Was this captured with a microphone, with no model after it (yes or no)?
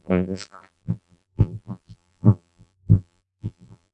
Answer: no